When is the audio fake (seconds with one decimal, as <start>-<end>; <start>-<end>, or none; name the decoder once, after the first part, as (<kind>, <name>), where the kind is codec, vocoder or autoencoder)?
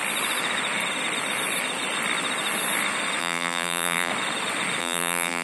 3.2-4.1 (vocoder, BigVGAN v2); 4.8-5.4